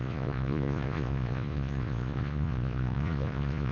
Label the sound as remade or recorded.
remade